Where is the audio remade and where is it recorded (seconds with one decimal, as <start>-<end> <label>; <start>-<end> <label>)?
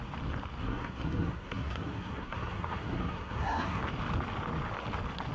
0.0-0.6 recorded; 0.6-3.8 remade; 3.8-5.3 recorded